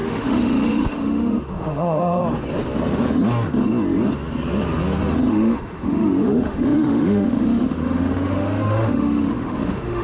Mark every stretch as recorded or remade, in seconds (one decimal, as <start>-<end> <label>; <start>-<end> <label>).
0.0-2.2 remade; 2.2-5.3 recorded; 5.3-10.0 remade